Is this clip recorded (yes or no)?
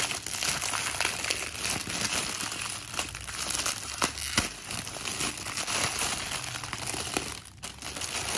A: yes